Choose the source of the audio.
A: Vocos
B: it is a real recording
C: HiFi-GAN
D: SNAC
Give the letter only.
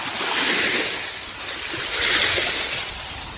B